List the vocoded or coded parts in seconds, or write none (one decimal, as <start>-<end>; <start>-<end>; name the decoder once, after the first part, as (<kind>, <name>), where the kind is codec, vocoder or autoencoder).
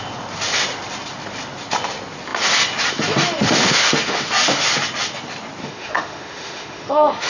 3.6-4.3 (autoencoder, DAC-VAE); 5.6-7.3